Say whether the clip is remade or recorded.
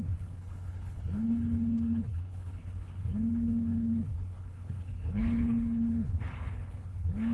remade